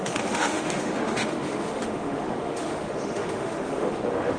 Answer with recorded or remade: remade